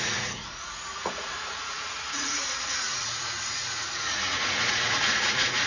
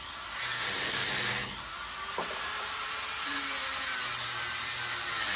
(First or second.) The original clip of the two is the second